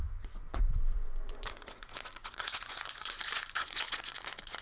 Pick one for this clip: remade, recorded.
remade